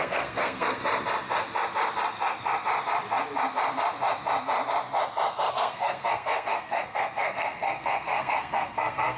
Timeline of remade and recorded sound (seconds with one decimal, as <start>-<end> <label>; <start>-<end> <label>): 0.0-0.8 remade; 0.8-5.5 recorded; 5.5-9.2 remade